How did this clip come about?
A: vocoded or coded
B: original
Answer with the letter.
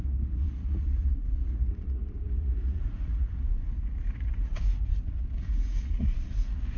A